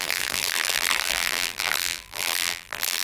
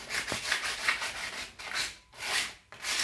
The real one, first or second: second